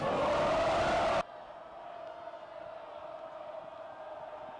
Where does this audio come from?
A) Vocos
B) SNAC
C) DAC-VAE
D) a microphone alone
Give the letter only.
D